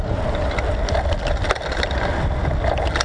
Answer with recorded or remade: recorded